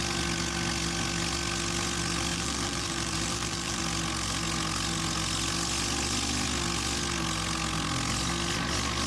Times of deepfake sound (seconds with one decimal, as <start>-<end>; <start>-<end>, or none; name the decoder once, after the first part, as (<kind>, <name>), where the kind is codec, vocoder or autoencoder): 2.3-3.8 (vocoder, BigVGAN v2)